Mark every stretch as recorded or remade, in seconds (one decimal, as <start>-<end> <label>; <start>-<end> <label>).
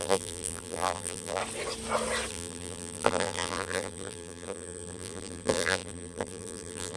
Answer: 0.0-1.4 remade; 1.4-2.3 recorded; 2.3-7.0 remade